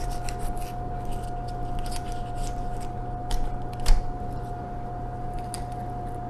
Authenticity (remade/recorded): recorded